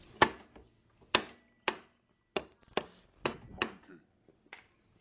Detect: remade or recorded recorded